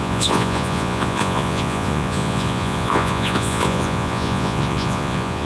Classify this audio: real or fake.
fake